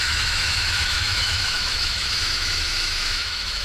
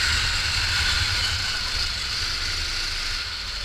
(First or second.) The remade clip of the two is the first